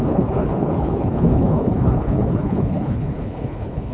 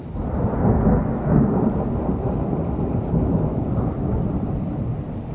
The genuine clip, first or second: second